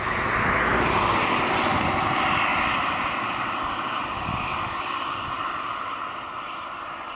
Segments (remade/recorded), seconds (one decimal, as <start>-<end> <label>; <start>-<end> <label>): 0.0-0.7 recorded; 0.7-1.5 remade; 1.5-2.5 recorded; 2.5-6.8 remade; 6.8-7.2 recorded